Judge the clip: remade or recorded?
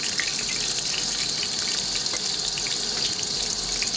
remade